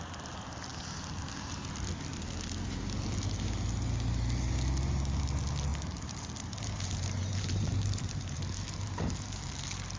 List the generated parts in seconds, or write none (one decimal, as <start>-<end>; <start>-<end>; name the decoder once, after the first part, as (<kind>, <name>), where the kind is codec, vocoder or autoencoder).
5.7-9.4 (vocoder, BigVGAN v2)